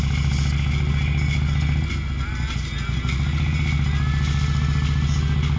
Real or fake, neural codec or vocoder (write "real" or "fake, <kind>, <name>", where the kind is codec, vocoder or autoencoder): real